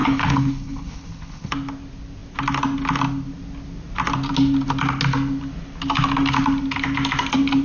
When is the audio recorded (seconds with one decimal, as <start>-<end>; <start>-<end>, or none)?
1.5-7.6